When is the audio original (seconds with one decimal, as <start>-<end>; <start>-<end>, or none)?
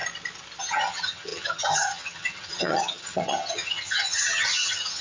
0.0-0.6